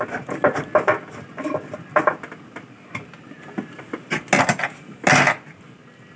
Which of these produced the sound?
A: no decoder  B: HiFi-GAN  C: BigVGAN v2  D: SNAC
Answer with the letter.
A